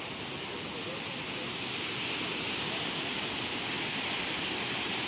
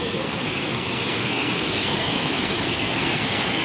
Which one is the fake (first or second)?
second